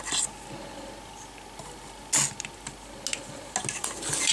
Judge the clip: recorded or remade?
recorded